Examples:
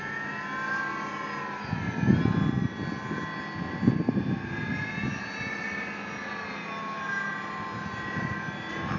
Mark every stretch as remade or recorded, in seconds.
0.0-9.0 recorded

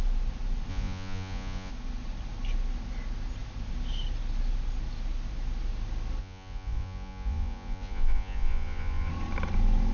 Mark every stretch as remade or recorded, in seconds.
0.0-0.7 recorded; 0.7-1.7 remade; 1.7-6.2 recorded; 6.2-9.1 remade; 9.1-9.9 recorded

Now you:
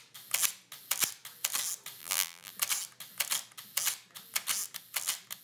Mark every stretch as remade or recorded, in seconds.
0.0-2.0 recorded; 2.0-2.5 remade; 2.5-5.4 recorded

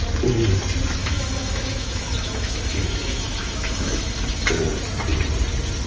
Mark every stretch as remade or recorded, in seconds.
0.0-1.0 recorded; 1.0-4.5 remade; 4.5-5.9 recorded

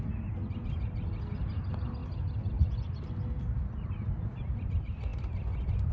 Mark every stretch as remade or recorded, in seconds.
0.0-5.9 recorded

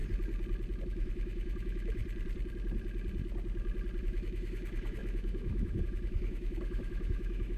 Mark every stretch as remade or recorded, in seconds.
0.0-0.8 recorded; 0.8-2.0 remade; 2.0-4.0 recorded; 4.0-7.6 remade

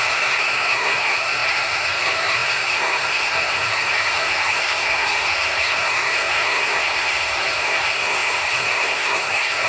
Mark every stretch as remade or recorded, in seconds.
0.0-9.7 remade

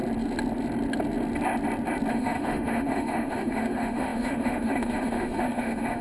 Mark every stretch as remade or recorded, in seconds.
0.0-2.1 recorded; 2.1-6.0 remade